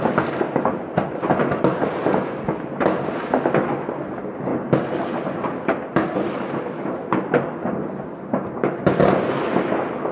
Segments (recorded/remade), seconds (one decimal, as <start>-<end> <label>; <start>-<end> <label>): 0.0-10.1 recorded

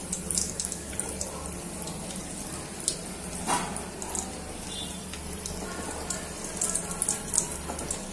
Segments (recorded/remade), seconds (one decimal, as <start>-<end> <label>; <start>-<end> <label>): 0.0-0.4 recorded; 0.4-0.9 remade; 0.9-8.1 recorded

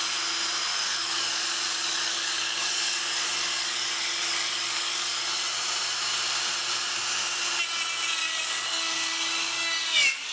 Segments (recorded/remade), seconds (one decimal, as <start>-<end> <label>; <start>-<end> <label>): 0.0-0.7 recorded; 0.7-5.2 remade; 5.2-8.2 recorded; 8.2-10.3 remade

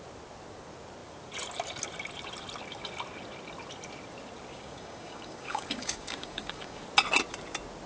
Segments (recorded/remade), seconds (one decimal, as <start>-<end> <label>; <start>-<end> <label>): 0.0-4.5 recorded; 4.5-6.8 remade; 6.8-7.9 recorded

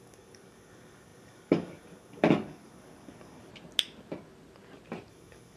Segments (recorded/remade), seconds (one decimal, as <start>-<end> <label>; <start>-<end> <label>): 0.0-3.5 remade; 3.5-5.1 recorded; 5.1-5.6 remade

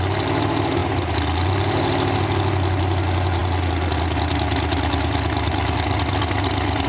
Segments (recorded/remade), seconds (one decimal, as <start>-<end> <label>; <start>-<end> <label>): 0.0-6.9 recorded